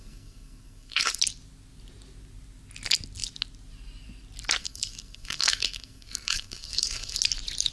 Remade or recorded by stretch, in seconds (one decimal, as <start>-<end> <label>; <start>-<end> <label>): 0.0-1.2 remade; 1.2-4.6 recorded; 4.6-7.2 remade; 7.2-7.7 recorded